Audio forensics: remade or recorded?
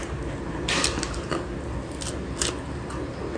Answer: recorded